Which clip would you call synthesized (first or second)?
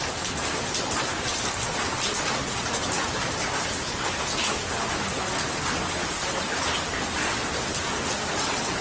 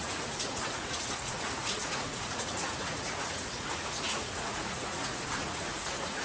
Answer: second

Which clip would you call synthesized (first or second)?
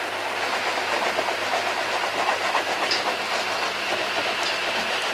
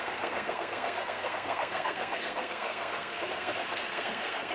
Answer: second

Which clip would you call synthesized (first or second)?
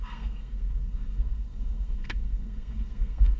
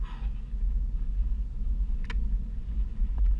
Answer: first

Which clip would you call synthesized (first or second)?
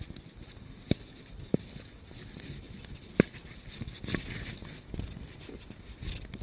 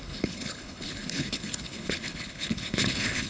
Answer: second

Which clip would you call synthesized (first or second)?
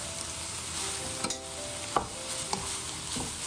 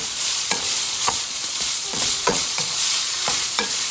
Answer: second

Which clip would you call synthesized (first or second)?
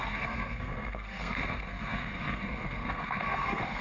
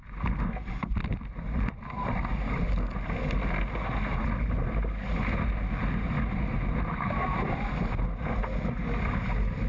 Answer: first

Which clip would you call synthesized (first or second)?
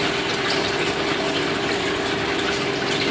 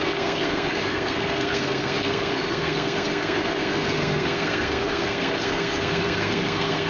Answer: second